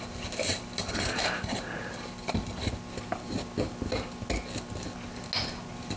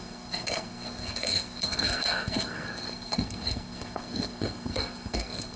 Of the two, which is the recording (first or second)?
first